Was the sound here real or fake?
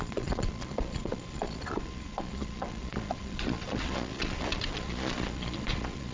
fake